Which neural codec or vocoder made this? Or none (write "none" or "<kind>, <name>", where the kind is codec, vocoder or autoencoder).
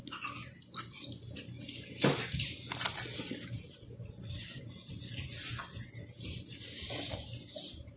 none